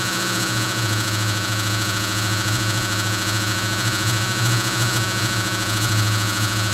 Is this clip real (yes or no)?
no